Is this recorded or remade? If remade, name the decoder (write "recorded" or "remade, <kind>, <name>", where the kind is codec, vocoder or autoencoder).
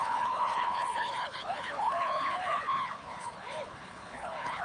remade, codec, HILCodec